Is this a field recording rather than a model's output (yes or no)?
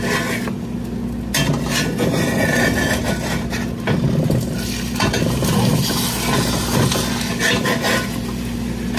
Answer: yes